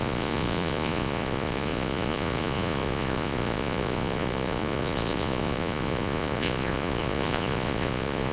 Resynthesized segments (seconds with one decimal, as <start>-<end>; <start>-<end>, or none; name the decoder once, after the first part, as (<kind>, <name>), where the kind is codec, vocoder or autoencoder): 0.0-8.3 (vocoder, Vocos)